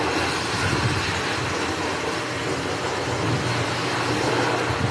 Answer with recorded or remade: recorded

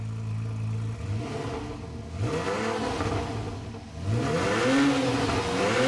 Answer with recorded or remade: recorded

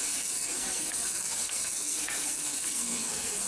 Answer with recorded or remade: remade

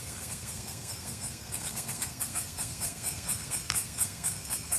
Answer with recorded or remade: remade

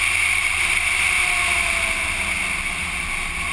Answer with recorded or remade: recorded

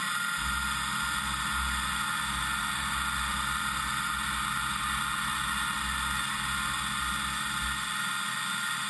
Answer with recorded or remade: recorded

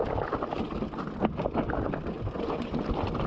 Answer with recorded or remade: recorded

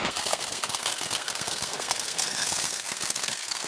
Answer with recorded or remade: remade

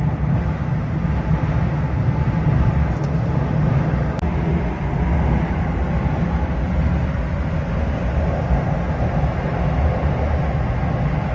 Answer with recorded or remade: recorded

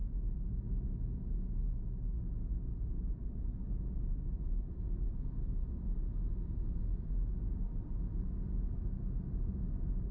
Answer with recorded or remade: recorded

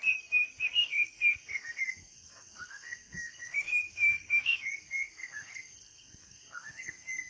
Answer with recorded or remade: remade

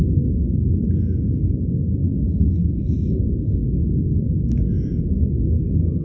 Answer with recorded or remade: remade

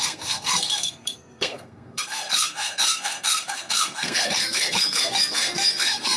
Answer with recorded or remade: remade